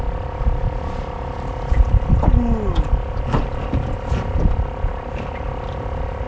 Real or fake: real